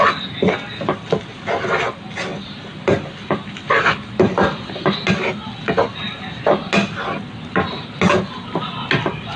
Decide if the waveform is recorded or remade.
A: recorded